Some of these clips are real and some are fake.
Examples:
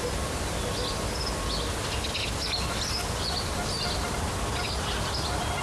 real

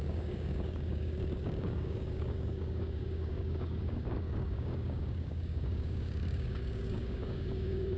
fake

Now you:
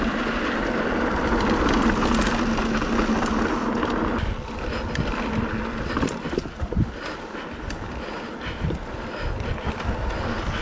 real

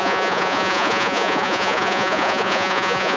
fake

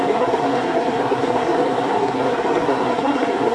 fake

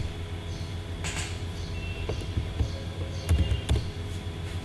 real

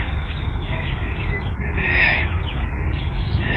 fake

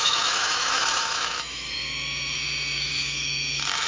fake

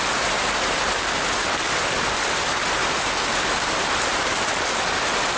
real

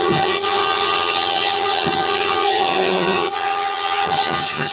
fake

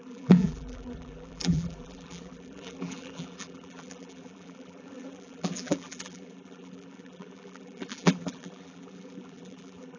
fake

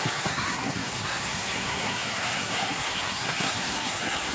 fake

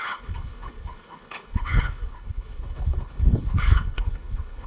fake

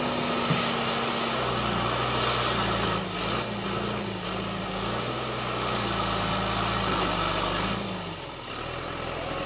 real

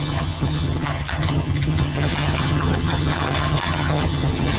fake